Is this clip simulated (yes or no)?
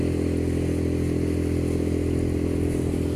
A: no